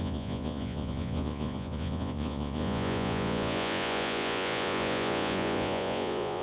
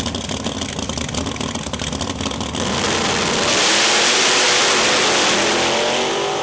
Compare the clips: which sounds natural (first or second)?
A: second